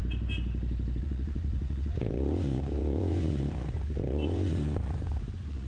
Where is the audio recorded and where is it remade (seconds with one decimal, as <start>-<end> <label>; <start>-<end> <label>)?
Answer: 0.0-1.0 recorded; 1.0-5.7 remade